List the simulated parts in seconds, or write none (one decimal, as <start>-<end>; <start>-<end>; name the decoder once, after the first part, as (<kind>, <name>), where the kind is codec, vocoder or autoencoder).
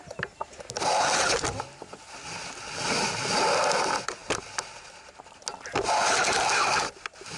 none